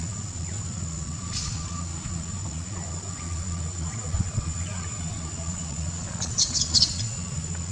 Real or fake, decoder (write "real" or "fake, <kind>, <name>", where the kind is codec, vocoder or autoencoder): fake, vocoder, Vocos